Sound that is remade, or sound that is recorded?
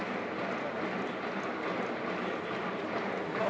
recorded